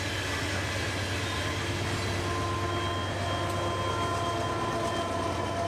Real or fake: real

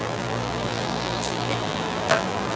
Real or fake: fake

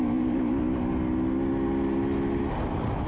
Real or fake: real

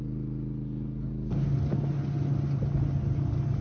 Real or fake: real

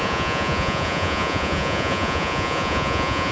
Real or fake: fake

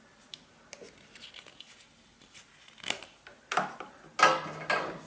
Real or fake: real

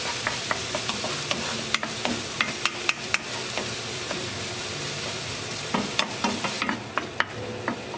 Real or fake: fake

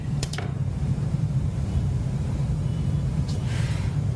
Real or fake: fake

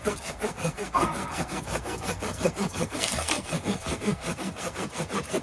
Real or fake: fake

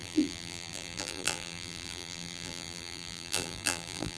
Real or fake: fake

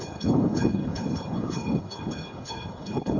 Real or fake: fake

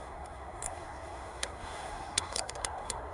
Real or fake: fake